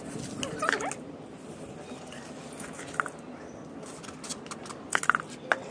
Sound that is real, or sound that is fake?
real